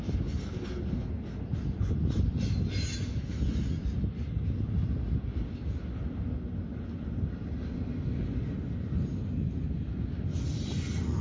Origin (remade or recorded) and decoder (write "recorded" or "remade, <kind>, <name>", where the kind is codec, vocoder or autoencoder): recorded